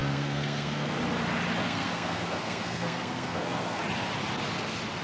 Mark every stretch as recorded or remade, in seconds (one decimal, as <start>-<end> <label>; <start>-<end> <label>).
0.0-1.0 remade; 1.0-1.6 recorded; 1.6-3.8 remade; 3.8-5.0 recorded